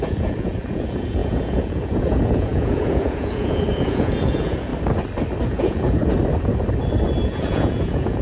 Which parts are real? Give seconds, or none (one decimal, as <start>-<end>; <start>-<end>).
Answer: 4.7-5.4; 6.1-7.2